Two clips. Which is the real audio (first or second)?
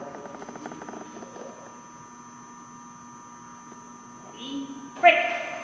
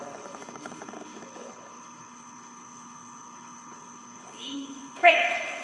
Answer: first